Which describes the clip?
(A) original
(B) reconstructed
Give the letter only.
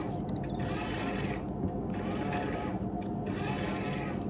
A